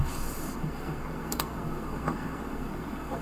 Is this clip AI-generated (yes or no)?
yes